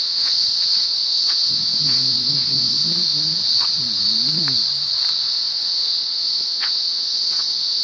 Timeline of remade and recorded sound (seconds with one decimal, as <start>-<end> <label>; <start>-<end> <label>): 0.0-2.8 remade; 2.8-5.2 recorded; 5.2-7.8 remade